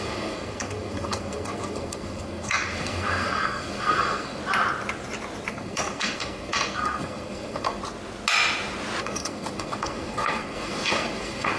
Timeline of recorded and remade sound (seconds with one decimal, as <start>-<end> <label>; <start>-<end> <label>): 0.0-4.4 remade; 4.4-5.5 recorded; 5.5-7.8 remade; 7.8-9.0 recorded; 9.0-11.6 remade